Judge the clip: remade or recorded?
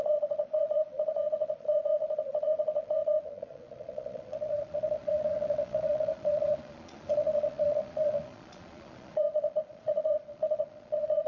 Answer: remade